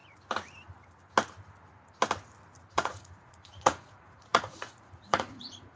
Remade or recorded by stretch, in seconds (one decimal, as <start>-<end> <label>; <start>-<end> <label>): 0.0-2.7 recorded; 2.7-5.8 remade